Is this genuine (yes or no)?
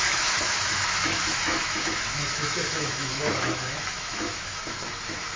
no